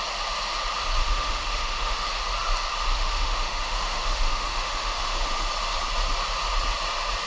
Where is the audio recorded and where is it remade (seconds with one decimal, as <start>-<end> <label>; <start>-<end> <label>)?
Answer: 0.0-1.0 recorded; 1.0-2.1 remade; 2.1-2.9 recorded; 2.9-5.2 remade; 5.2-7.3 recorded

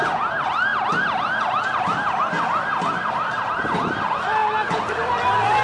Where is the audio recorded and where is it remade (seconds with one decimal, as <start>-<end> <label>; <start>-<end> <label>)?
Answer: 0.0-0.7 recorded; 0.7-3.5 remade; 3.5-5.6 recorded

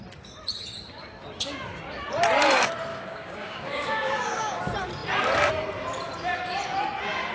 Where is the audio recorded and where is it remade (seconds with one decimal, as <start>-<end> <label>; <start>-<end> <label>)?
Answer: 0.0-2.9 recorded; 2.9-4.6 remade; 4.6-7.3 recorded

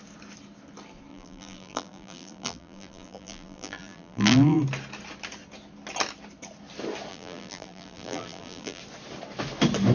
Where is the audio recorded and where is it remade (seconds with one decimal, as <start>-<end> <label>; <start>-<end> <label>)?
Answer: 0.0-1.1 recorded; 1.1-4.6 remade; 4.6-7.1 recorded; 7.1-8.8 remade; 8.8-9.9 recorded